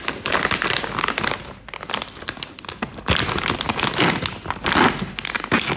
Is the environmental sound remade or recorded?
recorded